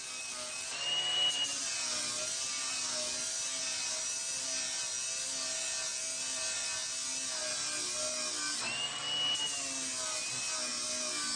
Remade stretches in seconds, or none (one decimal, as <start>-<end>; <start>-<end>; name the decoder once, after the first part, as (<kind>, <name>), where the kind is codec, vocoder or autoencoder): none